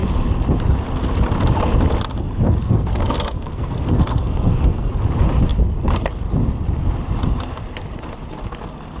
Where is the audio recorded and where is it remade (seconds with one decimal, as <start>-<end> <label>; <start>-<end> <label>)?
0.0-2.6 recorded; 2.6-4.9 remade; 4.9-9.0 recorded